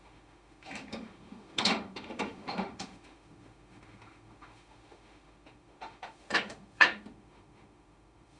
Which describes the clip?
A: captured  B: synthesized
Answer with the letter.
B